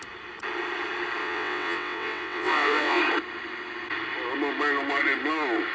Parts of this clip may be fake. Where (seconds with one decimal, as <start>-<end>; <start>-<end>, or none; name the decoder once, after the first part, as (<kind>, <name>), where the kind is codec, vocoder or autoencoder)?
1.2-3.0 (vocoder, WaveNeXt)